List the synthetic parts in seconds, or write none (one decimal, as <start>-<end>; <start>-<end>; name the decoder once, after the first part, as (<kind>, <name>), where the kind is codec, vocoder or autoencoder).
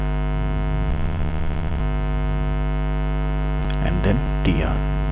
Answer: 0.9-1.8 (vocoder, WaveNeXt)